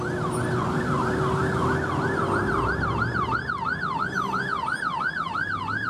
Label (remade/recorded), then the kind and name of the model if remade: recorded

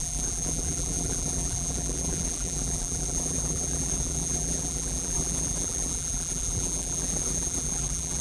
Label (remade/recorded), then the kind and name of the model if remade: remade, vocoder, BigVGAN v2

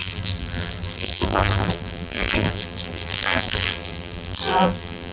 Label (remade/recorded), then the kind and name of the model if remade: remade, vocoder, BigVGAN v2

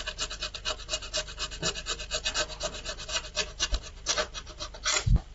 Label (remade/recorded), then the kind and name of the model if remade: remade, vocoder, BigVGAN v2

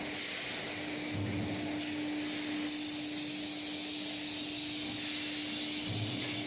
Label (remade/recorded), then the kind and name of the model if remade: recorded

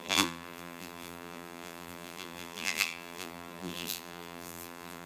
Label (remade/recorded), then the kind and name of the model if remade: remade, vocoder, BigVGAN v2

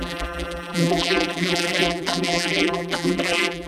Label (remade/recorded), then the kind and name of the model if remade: remade, vocoder, BigVGAN v2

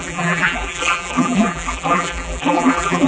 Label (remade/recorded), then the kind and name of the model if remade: remade, vocoder, BigVGAN v2